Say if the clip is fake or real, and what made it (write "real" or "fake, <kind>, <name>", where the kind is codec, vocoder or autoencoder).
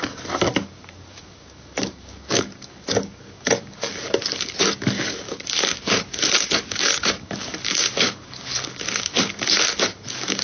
fake, codec, DAC